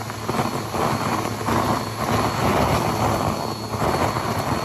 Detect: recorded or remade recorded